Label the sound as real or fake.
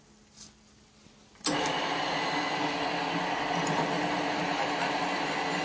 real